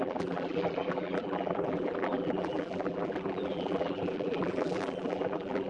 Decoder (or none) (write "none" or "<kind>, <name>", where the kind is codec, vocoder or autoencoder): vocoder, BigVGAN v2